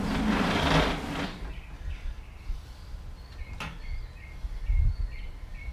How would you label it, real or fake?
real